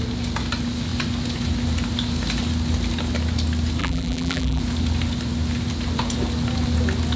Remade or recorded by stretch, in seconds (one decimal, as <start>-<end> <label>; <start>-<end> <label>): 0.0-3.8 recorded; 3.8-4.6 remade; 4.6-7.2 recorded